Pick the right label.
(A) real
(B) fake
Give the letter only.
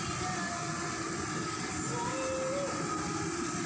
A